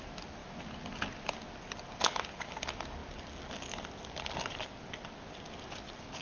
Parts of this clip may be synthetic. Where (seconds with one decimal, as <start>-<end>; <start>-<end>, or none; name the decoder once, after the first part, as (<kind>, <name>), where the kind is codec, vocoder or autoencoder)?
none